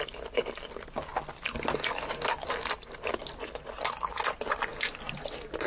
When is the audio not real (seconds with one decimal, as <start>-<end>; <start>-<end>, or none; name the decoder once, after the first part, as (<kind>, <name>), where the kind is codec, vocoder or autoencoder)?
none